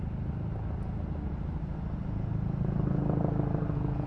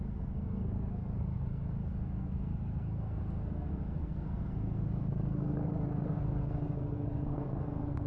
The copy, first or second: second